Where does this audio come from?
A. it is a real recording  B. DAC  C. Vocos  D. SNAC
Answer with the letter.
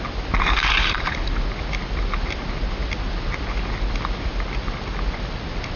A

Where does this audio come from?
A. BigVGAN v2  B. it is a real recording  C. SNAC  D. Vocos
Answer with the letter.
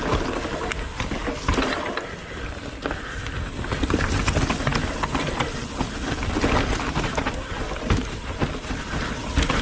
B